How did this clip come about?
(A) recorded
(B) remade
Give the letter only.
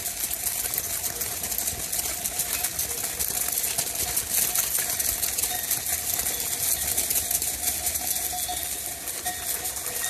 A